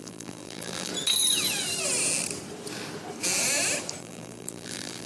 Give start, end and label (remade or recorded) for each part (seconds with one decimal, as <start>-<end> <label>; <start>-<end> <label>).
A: 0.0-0.9 remade; 0.9-4.0 recorded; 4.0-5.1 remade